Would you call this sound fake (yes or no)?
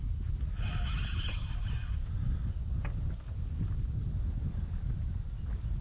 no